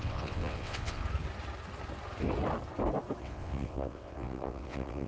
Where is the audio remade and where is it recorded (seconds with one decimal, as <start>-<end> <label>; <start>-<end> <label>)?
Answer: 0.0-1.0 remade; 1.0-3.2 recorded; 3.2-5.1 remade